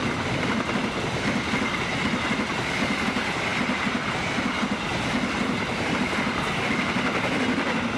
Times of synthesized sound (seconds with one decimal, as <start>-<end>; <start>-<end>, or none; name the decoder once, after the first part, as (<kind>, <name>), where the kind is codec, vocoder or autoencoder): none